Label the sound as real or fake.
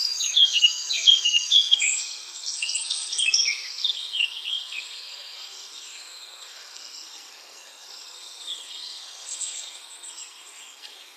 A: fake